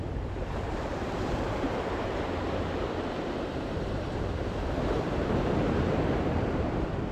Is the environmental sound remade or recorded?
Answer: remade